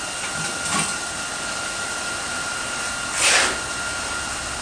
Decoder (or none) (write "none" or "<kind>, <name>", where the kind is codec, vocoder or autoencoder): none